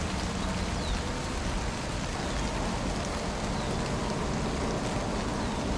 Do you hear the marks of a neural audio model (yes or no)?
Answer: no